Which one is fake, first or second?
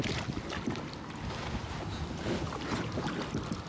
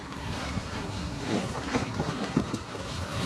second